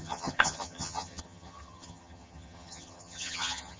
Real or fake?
fake